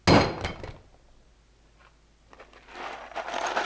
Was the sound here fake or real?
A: real